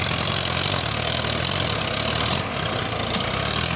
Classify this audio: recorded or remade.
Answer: recorded